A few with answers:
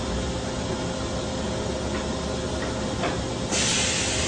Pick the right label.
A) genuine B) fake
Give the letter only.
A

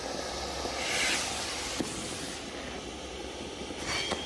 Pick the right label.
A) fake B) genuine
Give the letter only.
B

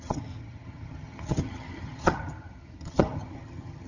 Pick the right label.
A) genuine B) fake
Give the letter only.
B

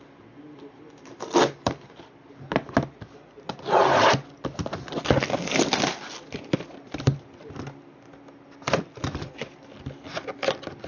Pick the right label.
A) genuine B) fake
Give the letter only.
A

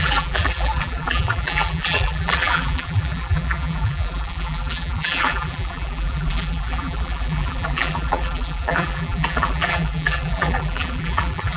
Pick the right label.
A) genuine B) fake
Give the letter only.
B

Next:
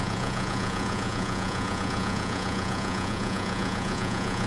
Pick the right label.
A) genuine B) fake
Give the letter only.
B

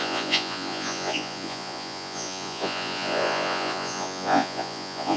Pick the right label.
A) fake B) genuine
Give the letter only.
A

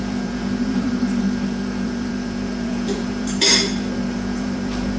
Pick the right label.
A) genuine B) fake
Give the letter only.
B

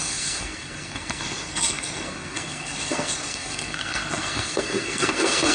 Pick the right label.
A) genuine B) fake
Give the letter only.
B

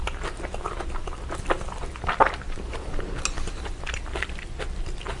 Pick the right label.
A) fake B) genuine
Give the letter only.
B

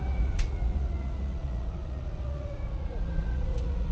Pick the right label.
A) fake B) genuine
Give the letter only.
A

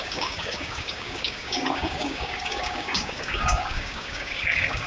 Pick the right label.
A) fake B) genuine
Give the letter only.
A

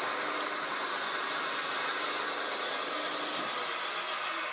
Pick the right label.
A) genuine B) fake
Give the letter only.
A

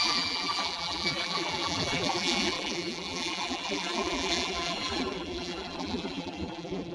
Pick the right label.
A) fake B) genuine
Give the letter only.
A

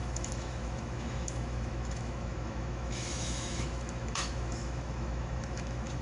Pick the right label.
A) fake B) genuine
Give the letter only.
A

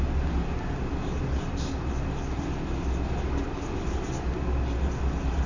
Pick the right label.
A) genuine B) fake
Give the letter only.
A